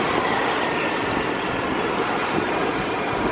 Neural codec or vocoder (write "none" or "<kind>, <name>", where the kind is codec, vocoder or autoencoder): none